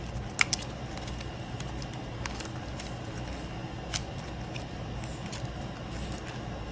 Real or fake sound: real